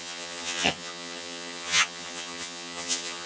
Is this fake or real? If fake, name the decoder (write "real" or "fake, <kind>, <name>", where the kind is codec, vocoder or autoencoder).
fake, vocoder, HiFi-GAN